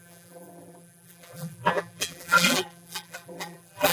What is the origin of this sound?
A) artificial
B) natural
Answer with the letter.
A